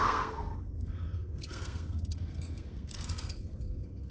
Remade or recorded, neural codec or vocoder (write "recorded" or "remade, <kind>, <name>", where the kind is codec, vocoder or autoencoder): remade, codec, SNAC